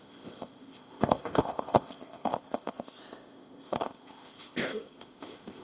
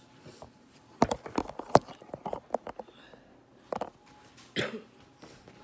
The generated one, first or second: first